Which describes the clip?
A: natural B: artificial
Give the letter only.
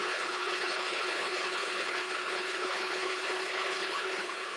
B